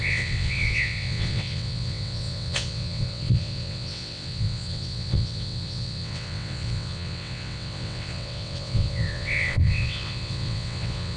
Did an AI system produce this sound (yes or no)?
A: yes